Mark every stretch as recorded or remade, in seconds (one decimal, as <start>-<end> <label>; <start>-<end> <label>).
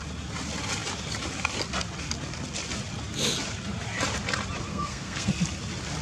0.0-4.7 recorded; 4.7-5.3 remade; 5.3-6.0 recorded